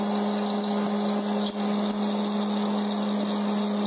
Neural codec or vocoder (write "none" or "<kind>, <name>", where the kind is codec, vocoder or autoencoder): none